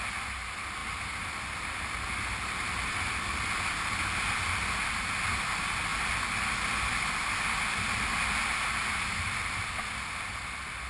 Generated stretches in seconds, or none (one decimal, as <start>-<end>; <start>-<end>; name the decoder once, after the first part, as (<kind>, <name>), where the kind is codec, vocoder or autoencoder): none